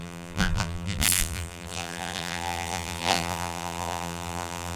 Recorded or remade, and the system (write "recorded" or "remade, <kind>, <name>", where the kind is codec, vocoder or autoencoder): remade, vocoder, BigVGAN v2